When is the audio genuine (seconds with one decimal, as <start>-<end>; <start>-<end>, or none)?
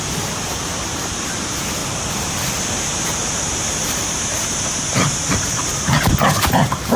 none